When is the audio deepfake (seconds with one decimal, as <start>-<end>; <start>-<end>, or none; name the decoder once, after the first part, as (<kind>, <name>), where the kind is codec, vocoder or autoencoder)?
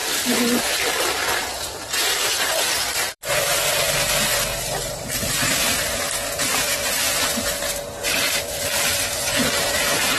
0.0-0.6 (vocoder, BigVGAN v2); 1.4-3.3; 4.5-5.4